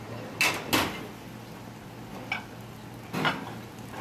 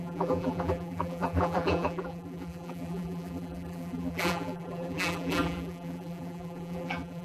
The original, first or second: first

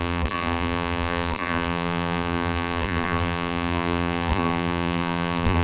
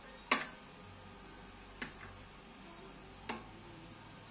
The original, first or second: second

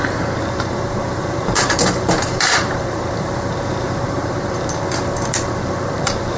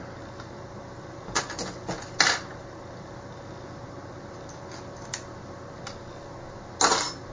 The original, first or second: second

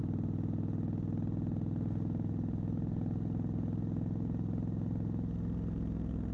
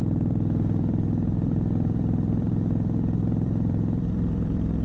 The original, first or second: first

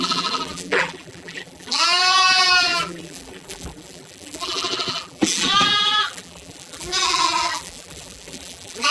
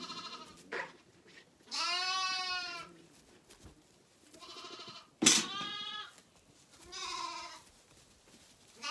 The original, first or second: second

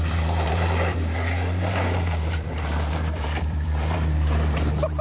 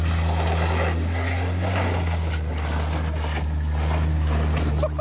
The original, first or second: second